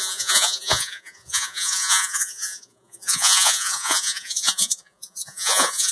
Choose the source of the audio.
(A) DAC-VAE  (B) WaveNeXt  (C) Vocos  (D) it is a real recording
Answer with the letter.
C